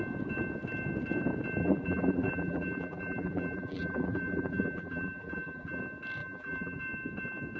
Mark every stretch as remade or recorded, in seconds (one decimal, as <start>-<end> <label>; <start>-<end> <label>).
0.0-1.6 recorded; 1.6-5.8 remade; 5.8-6.2 recorded; 6.2-6.8 remade; 6.8-7.6 recorded